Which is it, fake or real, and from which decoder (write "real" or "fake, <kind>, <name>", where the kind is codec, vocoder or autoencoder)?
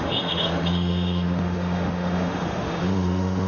fake, autoencoder, DAC-VAE